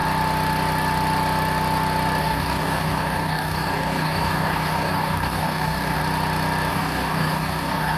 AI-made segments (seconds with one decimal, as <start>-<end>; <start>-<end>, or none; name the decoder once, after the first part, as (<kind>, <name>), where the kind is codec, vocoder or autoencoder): 2.2-6.0 (codec, DAC); 6.7-8.0